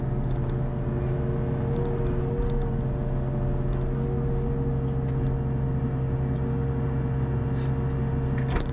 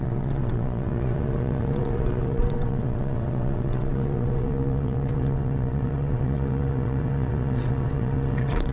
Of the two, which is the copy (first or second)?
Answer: second